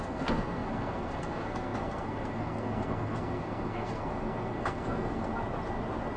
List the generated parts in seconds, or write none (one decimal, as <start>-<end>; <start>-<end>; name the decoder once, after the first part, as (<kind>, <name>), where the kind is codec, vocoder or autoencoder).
0.0-5.3 (codec, SNAC)